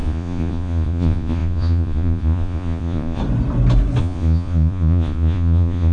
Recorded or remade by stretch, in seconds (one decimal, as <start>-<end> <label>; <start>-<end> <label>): 0.0-3.2 remade; 3.2-4.0 recorded; 4.0-5.9 remade